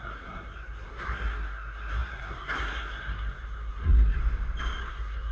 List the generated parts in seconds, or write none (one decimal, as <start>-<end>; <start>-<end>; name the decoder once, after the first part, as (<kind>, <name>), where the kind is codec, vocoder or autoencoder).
0.0-4.2 (codec, SNAC); 4.8-5.3